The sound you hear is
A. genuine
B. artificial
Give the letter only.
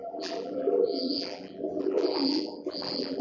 B